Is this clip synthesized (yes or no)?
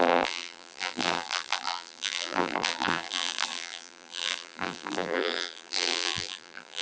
yes